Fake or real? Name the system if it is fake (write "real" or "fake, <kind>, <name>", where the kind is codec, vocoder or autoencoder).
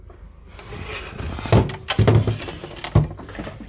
real